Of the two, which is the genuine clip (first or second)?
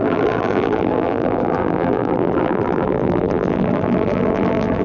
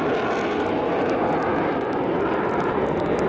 second